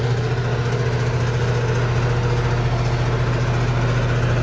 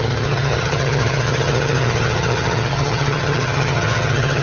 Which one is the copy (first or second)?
second